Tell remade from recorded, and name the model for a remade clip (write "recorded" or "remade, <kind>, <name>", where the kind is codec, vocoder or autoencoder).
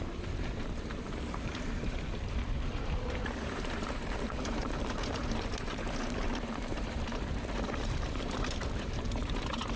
remade, vocoder, BigVGAN v2